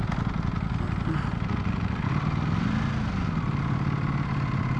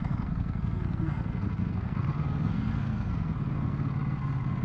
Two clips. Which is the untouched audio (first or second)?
first